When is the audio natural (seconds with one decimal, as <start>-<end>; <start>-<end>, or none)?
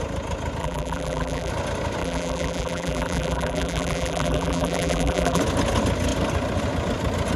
0.0-0.6; 1.5-2.0; 5.4-7.4